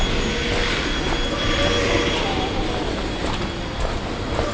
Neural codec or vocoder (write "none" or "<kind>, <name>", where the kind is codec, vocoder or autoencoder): none